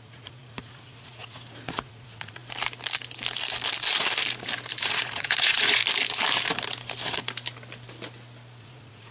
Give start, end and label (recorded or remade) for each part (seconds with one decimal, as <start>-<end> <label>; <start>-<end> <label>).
0.0-2.4 remade; 2.4-4.8 recorded; 4.8-5.8 remade; 5.8-8.6 recorded; 8.6-9.1 remade